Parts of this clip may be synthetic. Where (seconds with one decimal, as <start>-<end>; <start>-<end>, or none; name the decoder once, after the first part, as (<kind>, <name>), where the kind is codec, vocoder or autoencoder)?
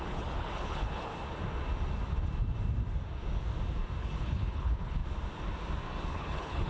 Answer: 0.0-1.1 (codec, HILCodec); 4.0-5.0; 6.1-6.7